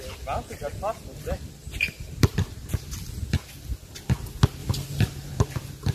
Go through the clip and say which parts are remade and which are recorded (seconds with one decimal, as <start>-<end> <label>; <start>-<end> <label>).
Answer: 0.0-0.7 recorded; 0.7-2.3 remade; 2.3-4.6 recorded; 4.6-5.4 remade; 5.4-5.9 recorded